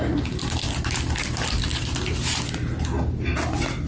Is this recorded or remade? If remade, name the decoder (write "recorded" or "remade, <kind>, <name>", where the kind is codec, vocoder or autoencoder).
recorded